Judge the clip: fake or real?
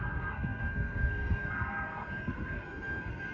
fake